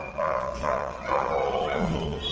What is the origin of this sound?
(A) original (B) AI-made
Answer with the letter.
B